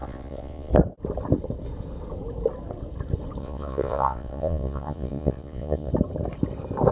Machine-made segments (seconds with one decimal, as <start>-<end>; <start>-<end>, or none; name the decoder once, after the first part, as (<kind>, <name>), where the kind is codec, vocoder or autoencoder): 0.0-0.7 (vocoder, Vocos); 3.4-5.9